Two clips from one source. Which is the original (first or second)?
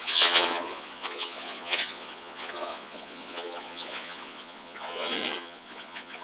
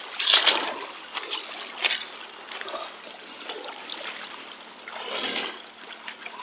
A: second